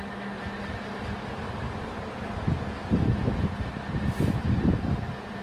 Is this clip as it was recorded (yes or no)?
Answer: yes